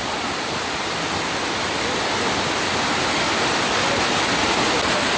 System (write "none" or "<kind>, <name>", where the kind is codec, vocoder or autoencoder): none